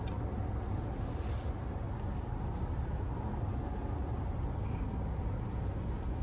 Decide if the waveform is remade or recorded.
recorded